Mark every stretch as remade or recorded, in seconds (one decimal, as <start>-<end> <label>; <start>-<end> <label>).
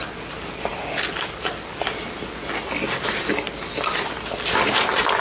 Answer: 0.0-5.2 recorded